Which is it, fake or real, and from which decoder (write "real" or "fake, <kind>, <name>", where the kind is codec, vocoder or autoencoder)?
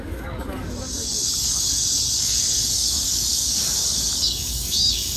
fake, codec, DAC